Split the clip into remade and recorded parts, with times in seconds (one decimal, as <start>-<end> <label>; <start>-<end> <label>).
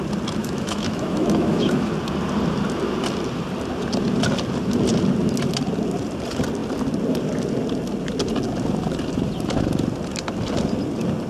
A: 0.0-0.4 recorded; 0.4-1.9 remade; 1.9-11.3 recorded